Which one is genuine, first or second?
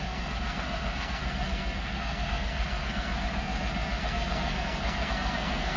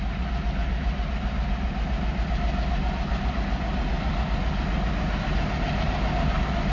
second